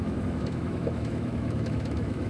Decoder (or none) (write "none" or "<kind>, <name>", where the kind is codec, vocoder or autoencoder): autoencoder, DAC-VAE